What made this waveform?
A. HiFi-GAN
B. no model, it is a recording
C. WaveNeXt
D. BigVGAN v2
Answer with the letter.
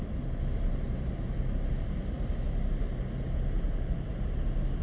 B